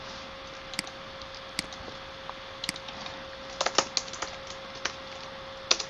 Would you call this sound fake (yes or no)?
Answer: no